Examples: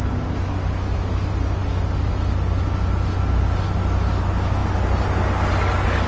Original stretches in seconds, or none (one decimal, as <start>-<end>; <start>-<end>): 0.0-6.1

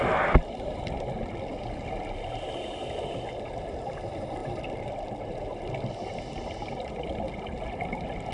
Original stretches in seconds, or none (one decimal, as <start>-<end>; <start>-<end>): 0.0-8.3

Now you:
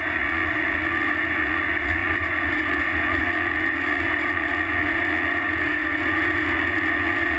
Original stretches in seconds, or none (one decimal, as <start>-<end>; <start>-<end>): none

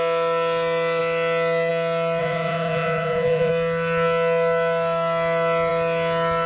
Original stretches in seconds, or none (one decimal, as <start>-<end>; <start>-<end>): 0.0-2.2; 3.5-6.5

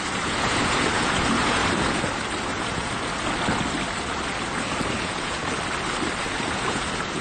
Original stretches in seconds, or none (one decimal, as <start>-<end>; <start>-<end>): 1.6-2.5; 3.1-4.9; 5.4-6.2